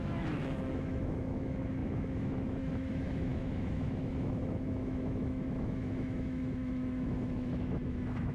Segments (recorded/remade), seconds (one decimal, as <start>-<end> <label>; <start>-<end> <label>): 0.0-8.3 remade